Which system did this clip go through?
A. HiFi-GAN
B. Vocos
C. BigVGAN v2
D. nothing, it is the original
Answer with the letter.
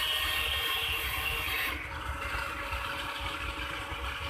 D